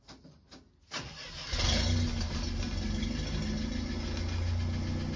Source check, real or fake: real